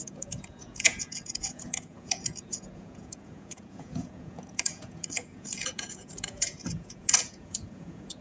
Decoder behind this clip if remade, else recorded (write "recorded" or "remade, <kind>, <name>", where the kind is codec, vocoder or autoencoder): remade, vocoder, Vocos